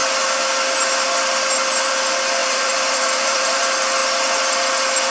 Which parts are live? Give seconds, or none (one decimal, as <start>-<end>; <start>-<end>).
0.0-2.4; 3.6-5.1